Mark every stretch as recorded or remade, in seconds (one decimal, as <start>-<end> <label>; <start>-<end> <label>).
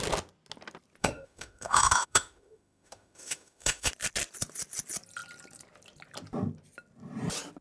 0.0-1.0 recorded; 1.0-3.9 remade; 3.9-7.6 recorded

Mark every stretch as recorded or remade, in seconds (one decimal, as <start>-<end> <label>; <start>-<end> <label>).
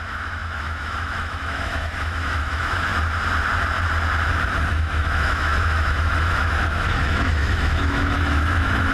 0.0-2.9 remade; 2.9-4.7 recorded; 4.7-8.9 remade